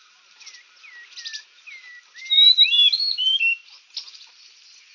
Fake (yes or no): no